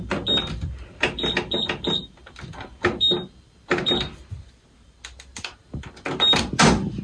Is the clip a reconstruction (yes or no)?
no